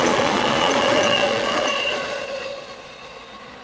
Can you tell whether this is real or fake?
fake